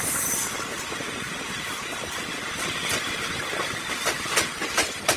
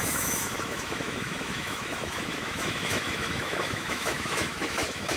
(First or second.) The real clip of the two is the first